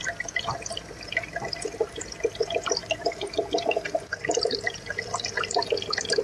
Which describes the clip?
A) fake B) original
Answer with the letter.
A